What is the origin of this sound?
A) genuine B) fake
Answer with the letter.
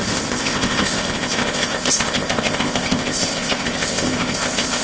B